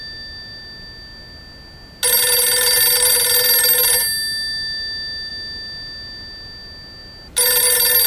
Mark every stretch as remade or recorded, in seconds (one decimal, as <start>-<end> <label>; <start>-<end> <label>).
0.0-8.1 recorded